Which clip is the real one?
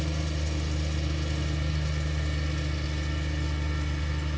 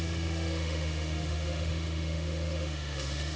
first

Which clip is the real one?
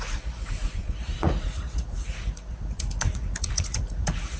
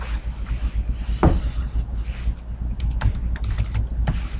second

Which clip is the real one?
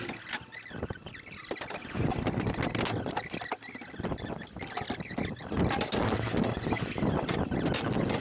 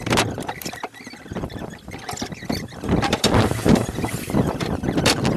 first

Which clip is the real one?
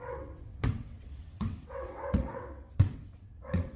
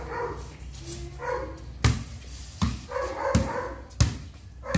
second